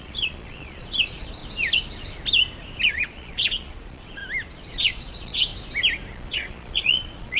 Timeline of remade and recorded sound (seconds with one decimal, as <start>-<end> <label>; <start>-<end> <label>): 0.0-1.4 remade; 1.4-2.9 recorded; 2.9-4.2 remade; 4.2-4.7 recorded; 4.7-5.5 remade; 5.5-6.1 recorded; 6.1-7.4 remade